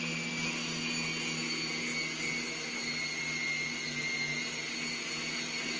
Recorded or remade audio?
recorded